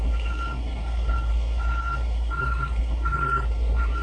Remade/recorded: remade